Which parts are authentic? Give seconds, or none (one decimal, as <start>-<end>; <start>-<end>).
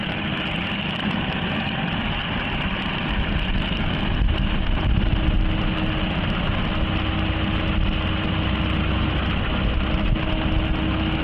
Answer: 0.0-11.2